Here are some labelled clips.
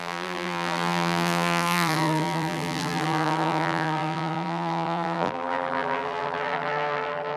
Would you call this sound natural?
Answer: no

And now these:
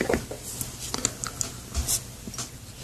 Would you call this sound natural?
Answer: yes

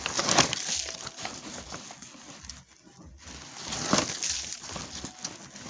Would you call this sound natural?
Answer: yes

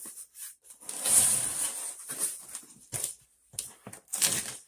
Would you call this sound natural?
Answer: yes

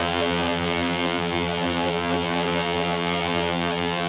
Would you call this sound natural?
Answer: no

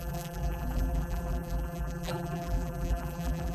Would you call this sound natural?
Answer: no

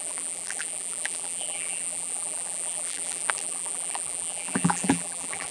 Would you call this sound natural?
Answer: no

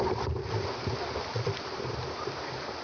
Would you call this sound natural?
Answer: yes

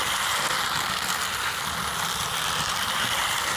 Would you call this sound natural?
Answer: yes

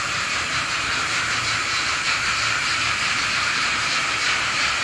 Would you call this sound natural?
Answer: no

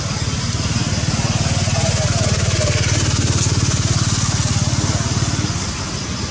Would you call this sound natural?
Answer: yes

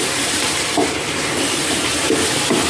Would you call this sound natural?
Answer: no